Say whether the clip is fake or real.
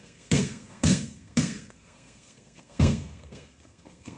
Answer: fake